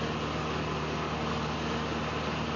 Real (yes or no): yes